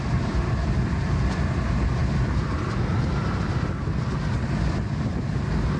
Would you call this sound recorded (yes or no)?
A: yes